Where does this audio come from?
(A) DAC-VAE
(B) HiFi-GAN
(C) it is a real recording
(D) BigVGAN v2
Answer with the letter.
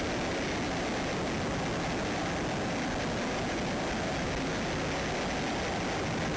C